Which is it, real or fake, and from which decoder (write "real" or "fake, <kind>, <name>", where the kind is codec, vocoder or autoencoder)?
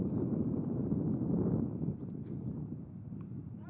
real